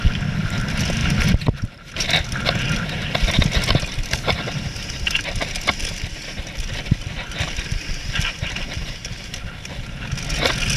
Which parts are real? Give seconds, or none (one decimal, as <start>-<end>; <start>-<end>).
0.0-10.8